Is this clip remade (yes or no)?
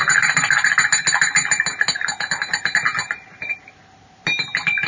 no